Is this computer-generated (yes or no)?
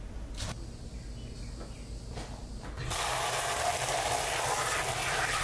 no